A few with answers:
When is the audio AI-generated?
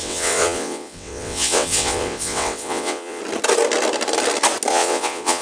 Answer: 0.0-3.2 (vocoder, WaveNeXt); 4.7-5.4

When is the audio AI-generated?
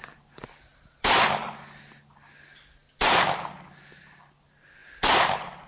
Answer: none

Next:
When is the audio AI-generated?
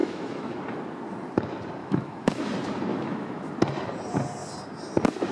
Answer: 0.0-0.6 (autoencoder, DAC-VAE); 1.8-2.4; 2.9-3.5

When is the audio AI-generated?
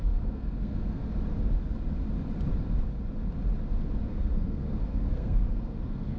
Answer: 0.0-1.0 (codec, SNAC); 4.1-6.2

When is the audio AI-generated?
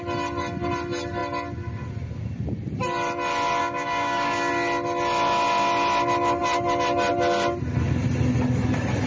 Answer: 3.6-4.5 (codec, DAC)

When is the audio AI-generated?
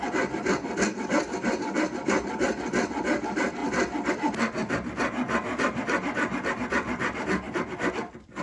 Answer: 0.0-3.6 (vocoder, BigVGAN v2); 4.1-4.6; 6.5-8.4